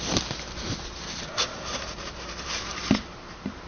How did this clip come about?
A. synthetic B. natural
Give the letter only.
A